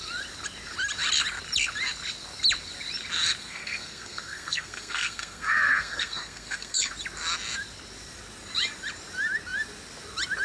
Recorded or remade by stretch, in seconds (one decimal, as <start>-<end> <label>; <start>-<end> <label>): 0.0-3.4 recorded; 3.4-6.9 remade; 6.9-10.4 recorded